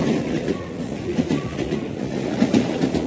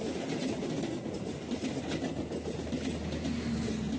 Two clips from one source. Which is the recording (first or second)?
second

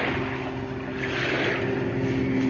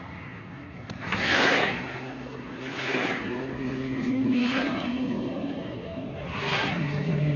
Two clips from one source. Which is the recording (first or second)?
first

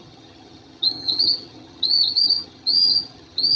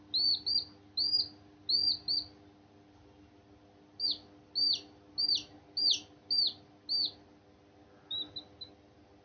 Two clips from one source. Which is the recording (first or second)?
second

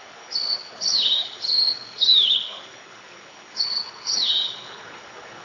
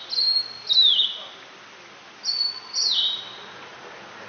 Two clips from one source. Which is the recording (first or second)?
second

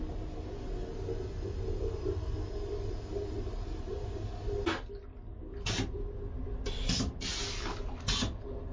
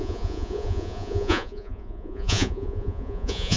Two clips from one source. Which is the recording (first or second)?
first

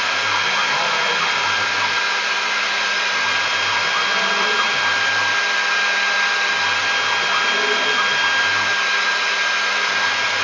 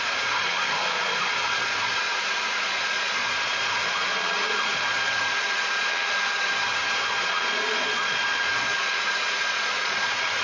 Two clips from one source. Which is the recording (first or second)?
first